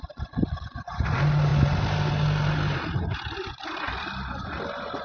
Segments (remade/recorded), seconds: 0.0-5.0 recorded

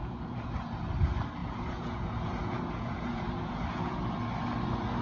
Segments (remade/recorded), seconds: 0.0-0.7 remade; 0.7-1.4 recorded; 1.4-4.0 remade; 4.0-5.0 recorded

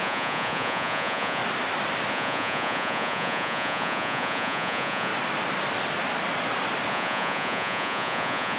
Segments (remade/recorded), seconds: 0.0-1.4 remade; 1.4-2.1 recorded; 2.1-5.1 remade; 5.1-6.9 recorded; 6.9-8.6 remade

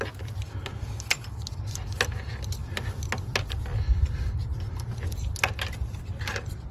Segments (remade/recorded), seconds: 0.0-6.7 recorded

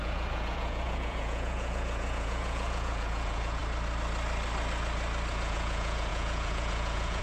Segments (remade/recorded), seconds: 0.0-3.6 remade; 3.6-5.3 recorded; 5.3-7.2 remade

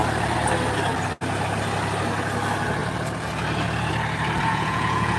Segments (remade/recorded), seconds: 0.0-4.5 recorded; 4.5-5.2 remade

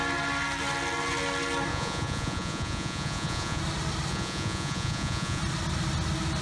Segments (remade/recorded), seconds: 0.0-1.7 recorded; 1.7-3.6 remade; 3.6-4.1 recorded; 4.1-5.4 remade; 5.4-6.4 recorded